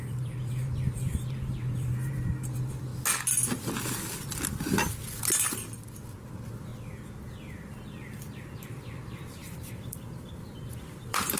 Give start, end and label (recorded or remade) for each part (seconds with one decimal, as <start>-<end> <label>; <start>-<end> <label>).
0.0-2.9 remade; 2.9-6.3 recorded; 6.3-6.7 remade; 6.7-7.4 recorded; 7.4-11.4 remade